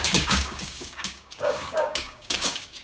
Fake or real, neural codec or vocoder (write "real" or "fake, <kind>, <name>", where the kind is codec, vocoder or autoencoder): fake, codec, DAC